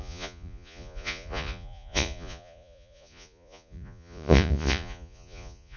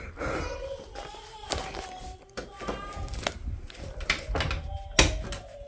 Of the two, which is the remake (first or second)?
first